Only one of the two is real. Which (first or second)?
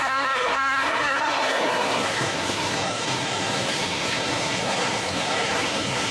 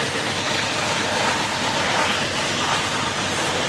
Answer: second